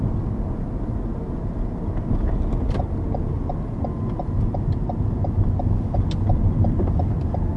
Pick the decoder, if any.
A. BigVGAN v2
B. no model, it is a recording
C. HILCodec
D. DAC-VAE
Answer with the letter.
B